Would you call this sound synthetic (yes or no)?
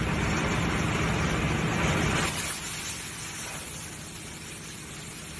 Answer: no